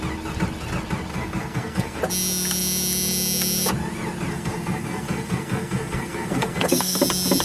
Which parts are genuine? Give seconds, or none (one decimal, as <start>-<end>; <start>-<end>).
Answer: 0.0-1.1; 2.0-4.3; 7.0-7.4